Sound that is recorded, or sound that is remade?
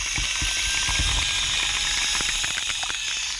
recorded